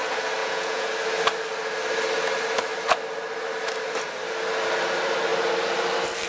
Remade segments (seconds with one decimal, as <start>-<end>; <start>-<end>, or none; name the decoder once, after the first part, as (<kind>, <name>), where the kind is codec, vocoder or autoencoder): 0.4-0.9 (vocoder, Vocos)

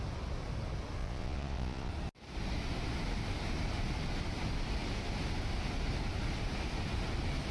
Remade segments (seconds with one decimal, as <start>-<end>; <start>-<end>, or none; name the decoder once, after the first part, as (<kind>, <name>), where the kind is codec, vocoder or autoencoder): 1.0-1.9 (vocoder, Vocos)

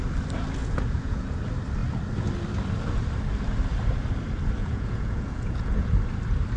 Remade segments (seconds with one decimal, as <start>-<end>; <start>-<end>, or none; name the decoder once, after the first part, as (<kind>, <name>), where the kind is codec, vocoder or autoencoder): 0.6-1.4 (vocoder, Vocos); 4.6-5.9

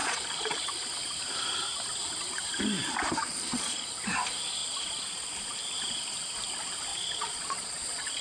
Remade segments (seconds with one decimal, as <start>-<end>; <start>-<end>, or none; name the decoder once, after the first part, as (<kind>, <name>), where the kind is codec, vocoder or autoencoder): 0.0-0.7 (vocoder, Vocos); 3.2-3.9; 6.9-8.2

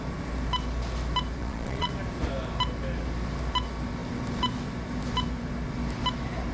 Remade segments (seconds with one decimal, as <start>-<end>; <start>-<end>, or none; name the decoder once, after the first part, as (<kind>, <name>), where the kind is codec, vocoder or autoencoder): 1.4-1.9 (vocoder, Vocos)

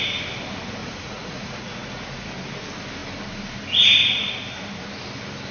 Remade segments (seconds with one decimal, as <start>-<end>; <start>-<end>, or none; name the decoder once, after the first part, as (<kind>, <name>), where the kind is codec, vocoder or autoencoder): 0.8-2.3 (vocoder, Vocos)

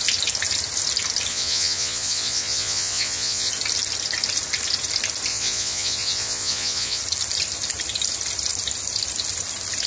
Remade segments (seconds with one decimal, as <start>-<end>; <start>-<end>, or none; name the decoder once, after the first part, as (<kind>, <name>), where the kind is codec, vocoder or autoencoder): 1.3-3.5 (vocoder, Vocos); 5.3-7.0